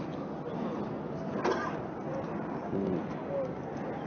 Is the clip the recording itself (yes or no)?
yes